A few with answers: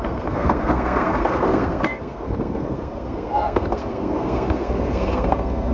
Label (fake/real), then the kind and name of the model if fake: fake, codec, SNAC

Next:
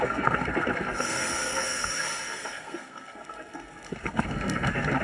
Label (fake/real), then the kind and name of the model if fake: fake, codec, SNAC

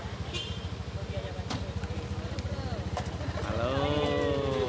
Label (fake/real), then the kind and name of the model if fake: real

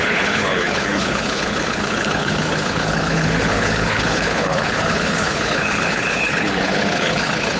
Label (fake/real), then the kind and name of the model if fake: fake, codec, HILCodec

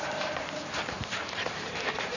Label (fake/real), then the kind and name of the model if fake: fake, vocoder, BigVGAN v2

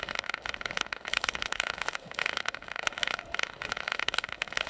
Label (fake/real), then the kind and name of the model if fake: fake, autoencoder, DAC-VAE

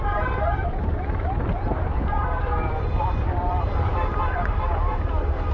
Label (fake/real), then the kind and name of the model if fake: fake, vocoder, BigVGAN v2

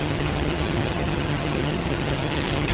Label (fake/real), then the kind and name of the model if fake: fake, vocoder, HiFi-GAN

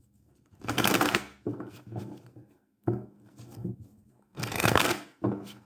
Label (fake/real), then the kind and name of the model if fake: fake, codec, SNAC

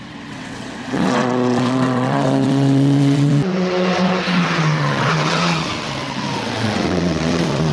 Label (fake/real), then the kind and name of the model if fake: fake, vocoder, WaveNeXt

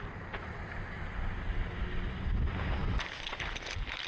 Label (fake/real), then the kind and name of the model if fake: real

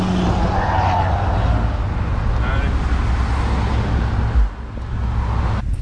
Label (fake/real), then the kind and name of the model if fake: real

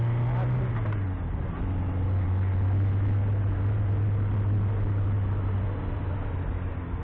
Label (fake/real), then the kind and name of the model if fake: real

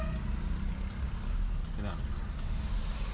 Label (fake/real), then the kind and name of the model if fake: real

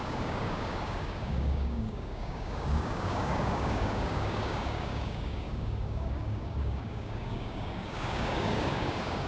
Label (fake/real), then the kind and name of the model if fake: fake, codec, DAC